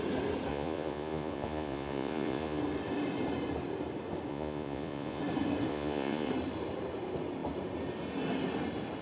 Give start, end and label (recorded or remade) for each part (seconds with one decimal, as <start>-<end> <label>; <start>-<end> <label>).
0.0-0.5 recorded; 0.5-2.6 remade; 2.6-4.3 recorded; 4.3-5.2 remade; 5.2-5.7 recorded; 5.7-6.3 remade; 6.3-9.0 recorded